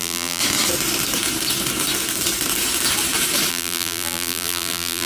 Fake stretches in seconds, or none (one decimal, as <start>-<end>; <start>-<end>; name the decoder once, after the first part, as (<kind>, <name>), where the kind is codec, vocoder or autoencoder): 0.0-0.4 (vocoder, BigVGAN v2); 3.5-5.1